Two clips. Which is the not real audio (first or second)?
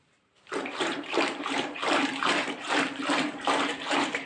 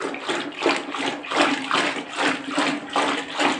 first